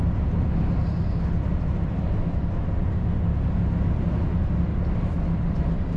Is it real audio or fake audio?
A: real